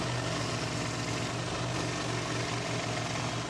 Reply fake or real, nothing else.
real